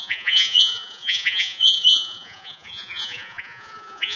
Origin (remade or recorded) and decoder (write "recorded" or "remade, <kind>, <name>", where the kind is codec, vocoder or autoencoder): remade, vocoder, Vocos